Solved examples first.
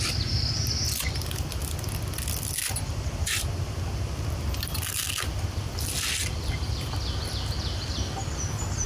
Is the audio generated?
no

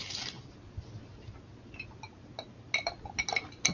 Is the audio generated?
no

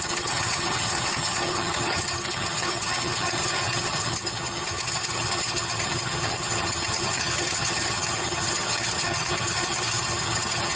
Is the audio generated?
yes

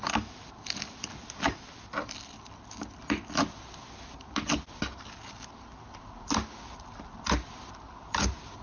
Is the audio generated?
no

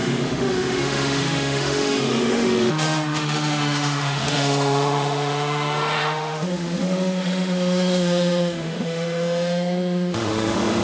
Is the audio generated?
yes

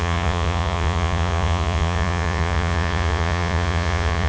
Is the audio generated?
yes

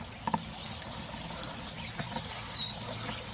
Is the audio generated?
no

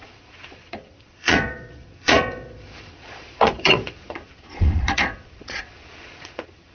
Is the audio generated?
yes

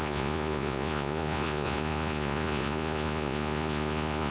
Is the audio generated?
yes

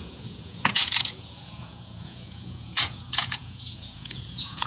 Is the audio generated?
yes